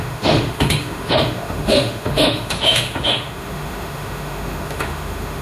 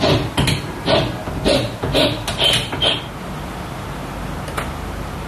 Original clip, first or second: second